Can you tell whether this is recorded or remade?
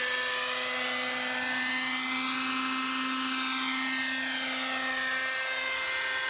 recorded